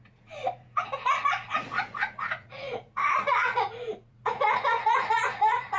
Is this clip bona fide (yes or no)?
no